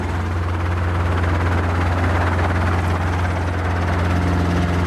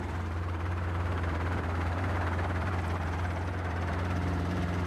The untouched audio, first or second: first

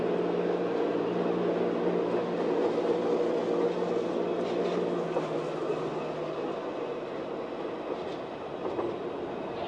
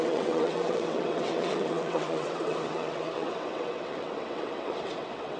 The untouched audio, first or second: first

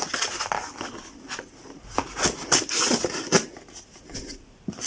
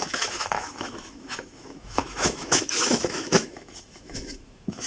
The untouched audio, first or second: first